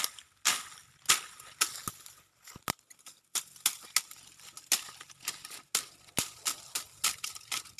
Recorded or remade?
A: recorded